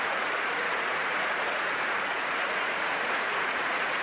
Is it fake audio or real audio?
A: fake